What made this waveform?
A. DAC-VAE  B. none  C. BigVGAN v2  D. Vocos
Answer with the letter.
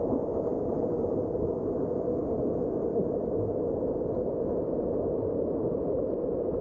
B